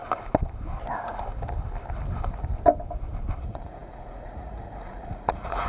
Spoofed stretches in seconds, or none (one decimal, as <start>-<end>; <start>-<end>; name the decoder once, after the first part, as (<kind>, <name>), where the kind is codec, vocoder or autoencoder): 3.4-5.7 (vocoder, Vocos)